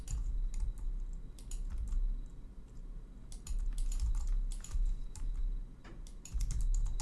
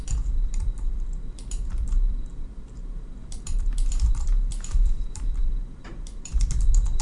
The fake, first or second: second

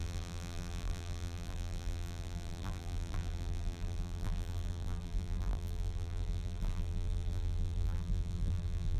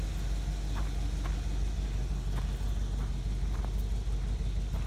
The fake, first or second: first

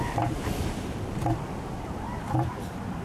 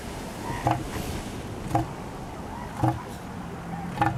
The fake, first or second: first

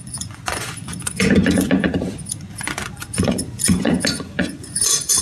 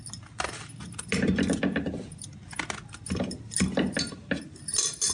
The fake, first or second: first